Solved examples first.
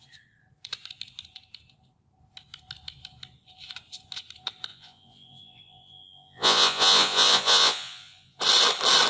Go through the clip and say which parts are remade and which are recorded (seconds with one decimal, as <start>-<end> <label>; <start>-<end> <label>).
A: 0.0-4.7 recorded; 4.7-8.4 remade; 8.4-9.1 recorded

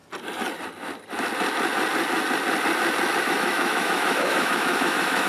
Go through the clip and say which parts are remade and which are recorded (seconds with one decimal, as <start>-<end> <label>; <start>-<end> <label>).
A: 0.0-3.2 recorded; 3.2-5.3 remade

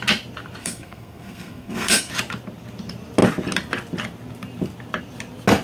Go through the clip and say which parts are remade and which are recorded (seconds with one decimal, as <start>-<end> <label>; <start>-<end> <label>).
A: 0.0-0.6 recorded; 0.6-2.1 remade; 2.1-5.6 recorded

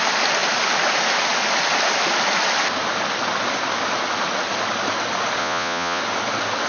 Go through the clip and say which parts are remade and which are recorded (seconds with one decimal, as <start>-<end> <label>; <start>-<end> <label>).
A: 0.0-5.4 recorded; 5.4-6.0 remade; 6.0-6.7 recorded

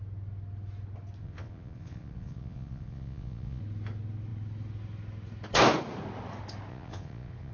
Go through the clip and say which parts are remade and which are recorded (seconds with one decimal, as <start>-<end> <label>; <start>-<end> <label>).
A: 0.0-1.2 recorded; 1.2-3.6 remade; 3.6-6.7 recorded; 6.7-7.5 remade

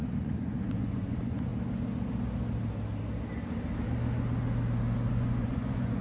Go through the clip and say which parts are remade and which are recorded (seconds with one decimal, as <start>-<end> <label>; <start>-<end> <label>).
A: 0.0-1.5 remade; 1.5-5.1 recorded; 5.1-6.0 remade

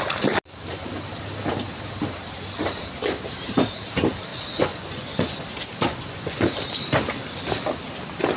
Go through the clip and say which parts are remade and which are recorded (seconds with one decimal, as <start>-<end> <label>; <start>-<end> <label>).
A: 0.0-4.3 recorded; 4.3-5.4 remade; 5.4-5.9 recorded; 5.9-6.5 remade; 6.5-8.4 recorded

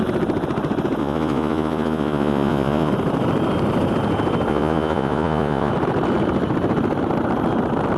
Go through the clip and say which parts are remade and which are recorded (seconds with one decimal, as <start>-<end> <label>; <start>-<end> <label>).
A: 0.0-1.0 recorded; 1.0-2.9 remade; 2.9-4.5 recorded; 4.5-5.7 remade; 5.7-8.0 recorded